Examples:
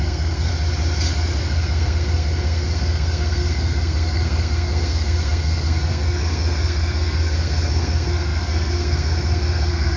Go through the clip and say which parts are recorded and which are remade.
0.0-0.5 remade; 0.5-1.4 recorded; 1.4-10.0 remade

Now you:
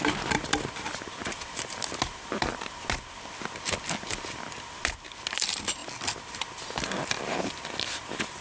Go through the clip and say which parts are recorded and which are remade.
0.0-8.4 recorded

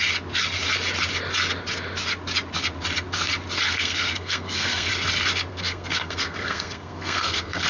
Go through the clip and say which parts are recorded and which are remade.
0.0-3.7 recorded; 3.7-4.9 remade; 4.9-5.5 recorded; 5.5-7.7 remade

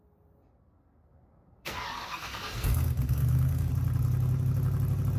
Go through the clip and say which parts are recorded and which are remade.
0.0-0.6 recorded; 0.6-3.7 remade; 3.7-5.2 recorded